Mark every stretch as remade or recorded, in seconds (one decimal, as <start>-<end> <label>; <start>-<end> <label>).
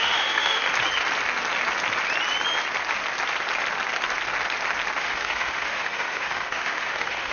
0.0-0.6 remade; 0.6-5.0 recorded; 5.0-7.3 remade